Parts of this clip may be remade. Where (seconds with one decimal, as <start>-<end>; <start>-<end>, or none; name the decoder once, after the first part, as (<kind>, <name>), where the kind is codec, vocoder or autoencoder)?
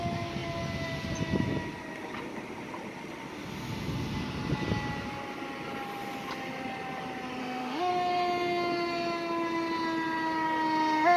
7.4-7.9 (autoencoder, DAC-VAE)